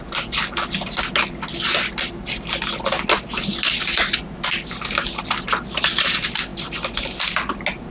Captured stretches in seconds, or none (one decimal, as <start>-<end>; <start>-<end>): 0.0-7.9